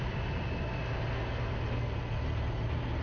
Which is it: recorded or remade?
recorded